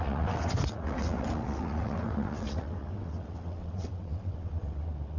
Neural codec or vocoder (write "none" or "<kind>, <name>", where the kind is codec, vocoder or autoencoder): vocoder, WaveNeXt